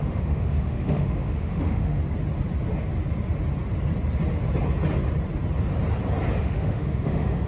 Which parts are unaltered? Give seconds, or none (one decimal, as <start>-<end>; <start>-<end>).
2.0-6.4